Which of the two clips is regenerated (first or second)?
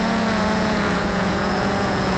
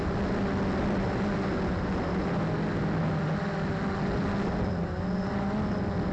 first